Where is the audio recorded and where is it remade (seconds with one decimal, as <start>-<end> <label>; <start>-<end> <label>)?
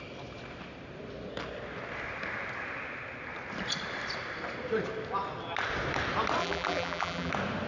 0.0-6.4 recorded; 6.4-7.3 remade; 7.3-7.7 recorded